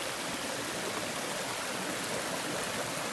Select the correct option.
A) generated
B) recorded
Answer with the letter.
B